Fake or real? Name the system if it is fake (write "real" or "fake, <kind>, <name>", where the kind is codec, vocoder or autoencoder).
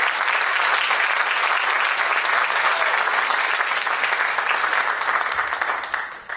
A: real